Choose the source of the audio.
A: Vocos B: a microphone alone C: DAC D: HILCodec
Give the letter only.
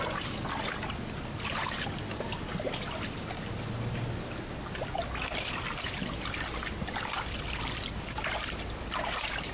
B